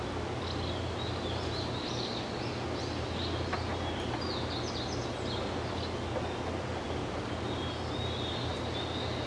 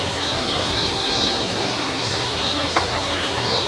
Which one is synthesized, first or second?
second